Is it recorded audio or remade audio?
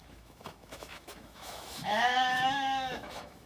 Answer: remade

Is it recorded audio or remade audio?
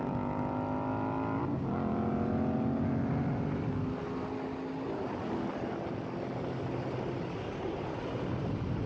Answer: recorded